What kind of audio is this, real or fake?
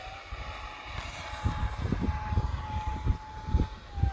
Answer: real